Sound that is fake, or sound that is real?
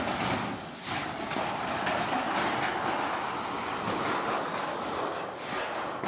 real